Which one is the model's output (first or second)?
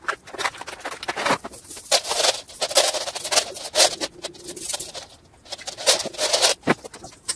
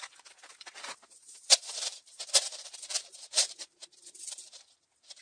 second